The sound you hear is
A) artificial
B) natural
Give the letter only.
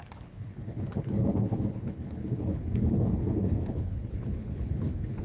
A